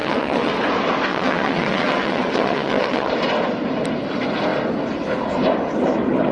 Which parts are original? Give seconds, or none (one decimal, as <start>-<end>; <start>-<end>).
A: 0.5-1.1; 3.1-6.3